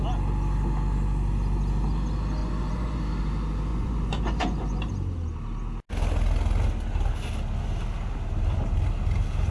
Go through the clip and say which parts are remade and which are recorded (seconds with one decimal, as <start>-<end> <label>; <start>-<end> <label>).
0.0-2.4 recorded; 2.4-3.0 remade; 3.0-3.7 recorded; 3.7-4.8 remade; 4.8-9.5 recorded